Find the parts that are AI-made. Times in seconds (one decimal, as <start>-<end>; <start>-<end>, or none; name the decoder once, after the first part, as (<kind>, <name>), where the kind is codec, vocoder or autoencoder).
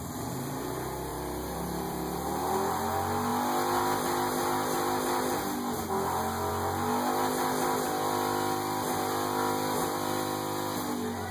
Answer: 1.1-2.2 (vocoder, BigVGAN v2)